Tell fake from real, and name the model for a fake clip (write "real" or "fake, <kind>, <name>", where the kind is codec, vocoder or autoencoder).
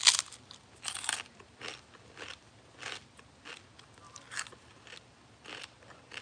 real